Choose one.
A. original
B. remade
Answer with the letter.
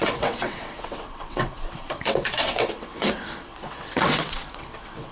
B